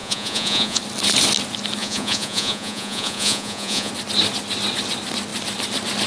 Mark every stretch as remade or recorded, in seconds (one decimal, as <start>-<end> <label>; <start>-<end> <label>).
0.0-0.8 remade; 0.8-1.8 recorded; 1.8-3.9 remade; 3.9-6.1 recorded